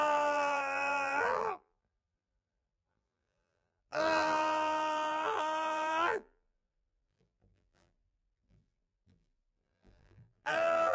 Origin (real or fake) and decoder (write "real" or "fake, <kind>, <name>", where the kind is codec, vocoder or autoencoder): fake, vocoder, BigVGAN v2